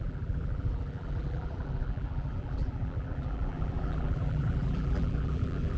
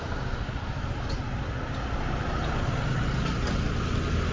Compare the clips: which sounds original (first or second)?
second